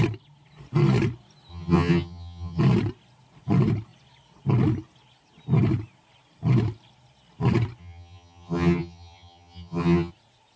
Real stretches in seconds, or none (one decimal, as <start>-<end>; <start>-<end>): 0.0-1.5; 2.6-7.8; 10.1-10.6